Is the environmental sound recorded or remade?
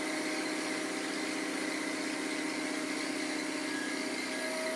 recorded